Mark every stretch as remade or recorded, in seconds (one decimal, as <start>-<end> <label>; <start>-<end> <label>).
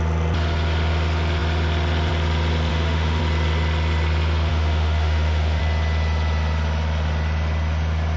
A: 0.0-2.7 recorded; 2.7-3.2 remade; 3.2-4.5 recorded; 4.5-5.6 remade; 5.6-8.2 recorded